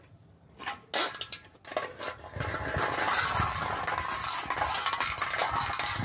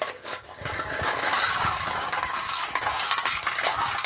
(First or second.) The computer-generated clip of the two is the second